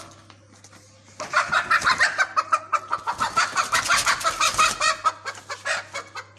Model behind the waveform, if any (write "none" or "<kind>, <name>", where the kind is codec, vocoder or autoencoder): none